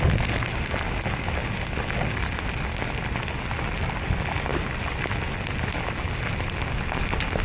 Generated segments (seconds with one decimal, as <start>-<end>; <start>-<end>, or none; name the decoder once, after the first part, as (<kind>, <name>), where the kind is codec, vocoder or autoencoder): none